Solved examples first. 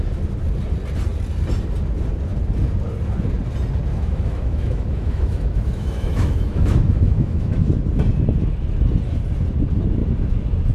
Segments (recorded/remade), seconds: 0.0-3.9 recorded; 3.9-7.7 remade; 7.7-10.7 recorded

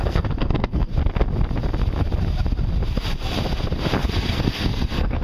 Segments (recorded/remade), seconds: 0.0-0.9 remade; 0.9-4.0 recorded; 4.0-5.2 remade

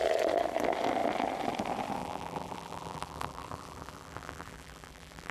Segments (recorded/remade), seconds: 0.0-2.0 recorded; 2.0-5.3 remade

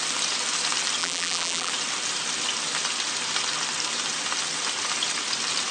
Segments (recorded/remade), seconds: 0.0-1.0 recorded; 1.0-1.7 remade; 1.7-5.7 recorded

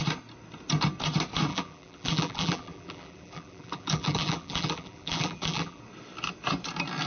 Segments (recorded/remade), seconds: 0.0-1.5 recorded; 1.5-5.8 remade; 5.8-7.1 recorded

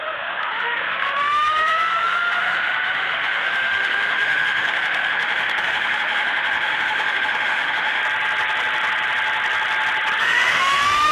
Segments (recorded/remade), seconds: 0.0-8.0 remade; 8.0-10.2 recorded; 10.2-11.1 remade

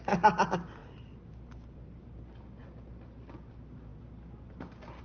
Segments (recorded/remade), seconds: 0.0-5.0 recorded